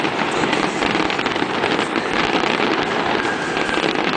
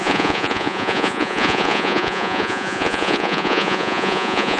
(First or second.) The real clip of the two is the first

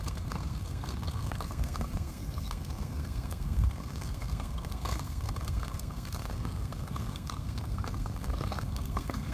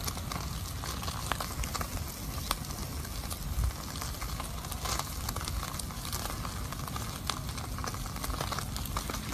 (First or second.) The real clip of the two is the second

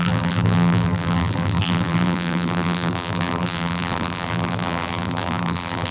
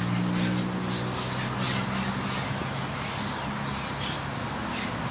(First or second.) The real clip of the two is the second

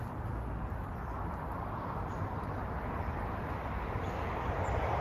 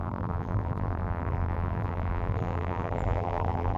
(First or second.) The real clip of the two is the first